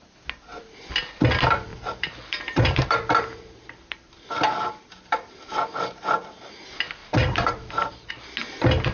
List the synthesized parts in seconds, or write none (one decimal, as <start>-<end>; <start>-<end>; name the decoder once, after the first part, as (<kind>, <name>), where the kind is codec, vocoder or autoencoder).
1.7-6.5 (vocoder, BigVGAN v2); 7.0-8.1